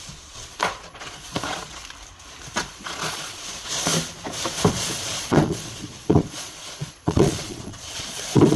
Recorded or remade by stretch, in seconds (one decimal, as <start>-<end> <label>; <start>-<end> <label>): 0.0-1.8 remade; 1.8-2.6 recorded; 2.6-3.9 remade; 3.9-4.7 recorded; 4.7-8.6 remade